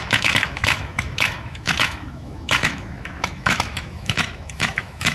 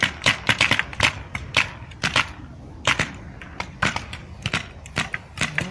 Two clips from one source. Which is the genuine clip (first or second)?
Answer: second